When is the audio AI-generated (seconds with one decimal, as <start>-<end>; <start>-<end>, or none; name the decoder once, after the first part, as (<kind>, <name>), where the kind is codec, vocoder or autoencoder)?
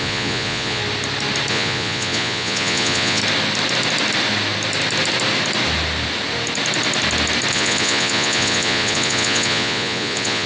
0.0-0.8 (vocoder, Vocos); 1.5-3.2; 7.5-10.5